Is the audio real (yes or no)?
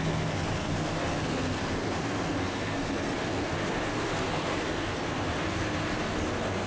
no